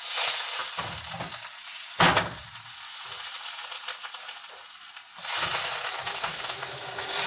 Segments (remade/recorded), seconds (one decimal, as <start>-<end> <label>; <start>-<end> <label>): 0.0-6.0 recorded; 6.0-6.8 remade; 6.8-7.3 recorded